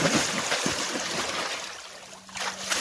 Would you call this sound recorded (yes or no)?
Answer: yes